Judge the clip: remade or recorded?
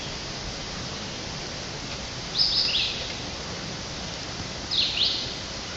recorded